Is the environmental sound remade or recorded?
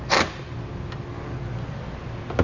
recorded